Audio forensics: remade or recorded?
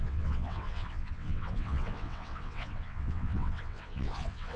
remade